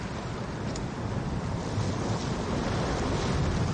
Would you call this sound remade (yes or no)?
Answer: no